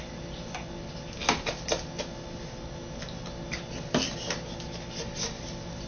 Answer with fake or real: real